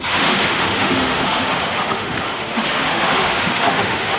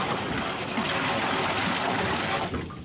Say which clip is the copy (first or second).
first